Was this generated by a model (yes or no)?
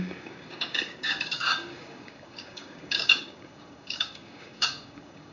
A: yes